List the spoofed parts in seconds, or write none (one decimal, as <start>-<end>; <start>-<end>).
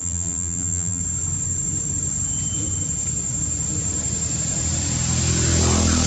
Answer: 0.0-1.0